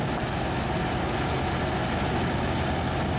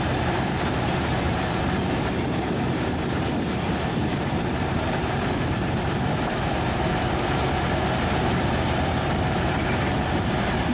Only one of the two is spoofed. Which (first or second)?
second